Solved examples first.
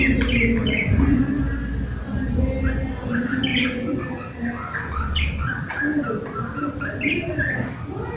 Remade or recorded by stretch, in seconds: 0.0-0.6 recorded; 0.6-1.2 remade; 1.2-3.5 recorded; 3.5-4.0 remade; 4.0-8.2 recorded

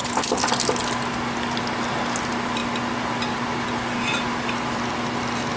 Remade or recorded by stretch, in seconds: 0.0-5.6 recorded

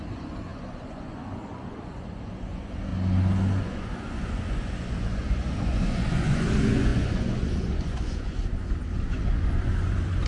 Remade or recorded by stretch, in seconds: 0.0-2.9 remade; 2.9-3.6 recorded; 3.6-10.3 remade